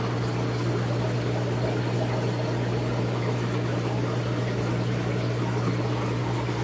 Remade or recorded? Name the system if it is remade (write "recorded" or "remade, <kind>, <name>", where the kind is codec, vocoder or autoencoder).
recorded